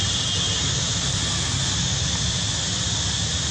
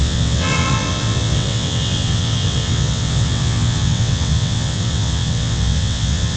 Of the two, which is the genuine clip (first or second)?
first